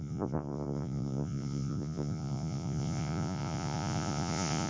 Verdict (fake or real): fake